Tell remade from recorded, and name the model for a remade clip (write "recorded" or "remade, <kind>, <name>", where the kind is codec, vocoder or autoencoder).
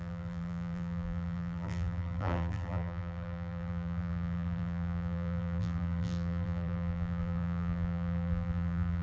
remade, vocoder, BigVGAN v2